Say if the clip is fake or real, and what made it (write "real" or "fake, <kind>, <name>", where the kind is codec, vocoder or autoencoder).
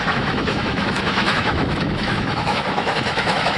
fake, autoencoder, DAC-VAE